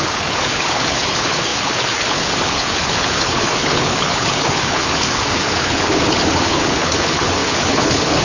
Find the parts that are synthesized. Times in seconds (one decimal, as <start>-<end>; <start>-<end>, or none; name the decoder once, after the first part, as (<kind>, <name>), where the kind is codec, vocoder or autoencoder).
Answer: 0.0-8.2 (codec, HILCodec)